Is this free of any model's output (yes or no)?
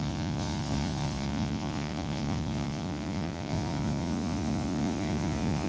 no